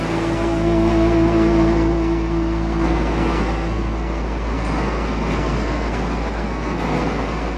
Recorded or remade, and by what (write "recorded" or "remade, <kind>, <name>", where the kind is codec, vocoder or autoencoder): remade, codec, SNAC